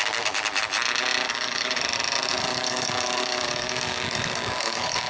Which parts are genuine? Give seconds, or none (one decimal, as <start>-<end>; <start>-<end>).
0.0-1.2; 1.8-2.4

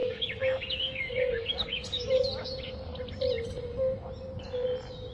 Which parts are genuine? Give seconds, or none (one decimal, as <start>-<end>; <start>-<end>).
2.1-5.1

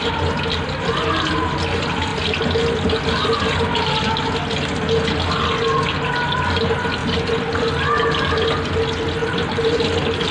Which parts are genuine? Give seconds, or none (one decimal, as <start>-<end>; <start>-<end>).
0.0-7.0; 7.6-9.2; 9.7-10.3

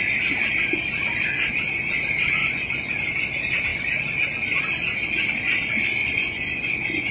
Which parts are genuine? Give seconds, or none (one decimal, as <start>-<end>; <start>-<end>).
0.0-2.4; 2.9-6.0

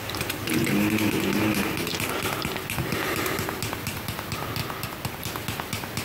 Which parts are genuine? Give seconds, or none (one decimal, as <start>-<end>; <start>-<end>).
0.0-6.0